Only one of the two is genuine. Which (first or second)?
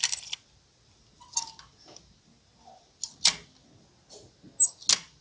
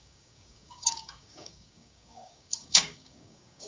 first